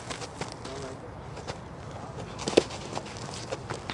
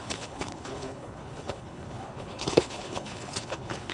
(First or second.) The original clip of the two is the first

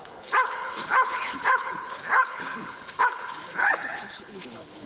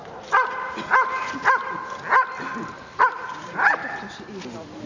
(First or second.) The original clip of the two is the second